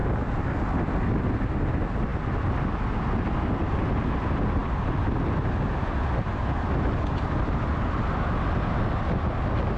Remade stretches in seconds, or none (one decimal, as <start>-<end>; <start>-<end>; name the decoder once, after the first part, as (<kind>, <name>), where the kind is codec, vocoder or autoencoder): none